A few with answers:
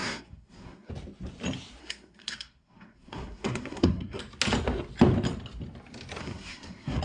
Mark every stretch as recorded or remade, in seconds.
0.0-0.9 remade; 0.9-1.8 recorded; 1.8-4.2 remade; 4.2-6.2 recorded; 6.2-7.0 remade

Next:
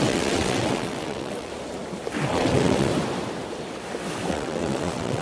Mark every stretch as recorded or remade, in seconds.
0.0-1.5 remade; 1.5-2.3 recorded; 2.3-2.9 remade; 2.9-4.3 recorded; 4.3-5.2 remade

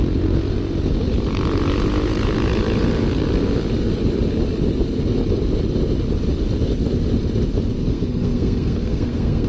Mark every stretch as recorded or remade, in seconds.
0.0-7.9 recorded; 7.9-9.5 remade

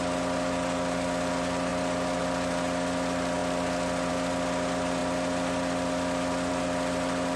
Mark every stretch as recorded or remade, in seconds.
0.0-7.4 recorded

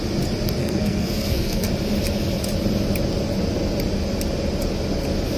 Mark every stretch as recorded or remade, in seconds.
0.0-0.6 recorded; 0.6-1.7 remade; 1.7-5.4 recorded

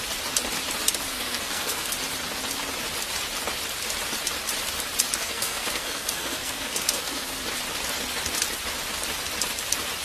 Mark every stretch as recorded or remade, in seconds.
0.0-1.1 recorded; 1.1-1.9 remade; 1.9-5.2 recorded; 5.2-7.4 remade; 7.4-10.0 recorded